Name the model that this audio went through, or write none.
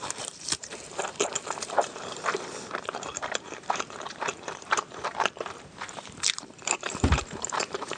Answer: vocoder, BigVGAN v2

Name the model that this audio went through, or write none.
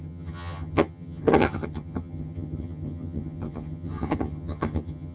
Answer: vocoder, HiFi-GAN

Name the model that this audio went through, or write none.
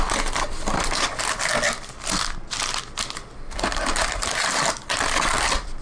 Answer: none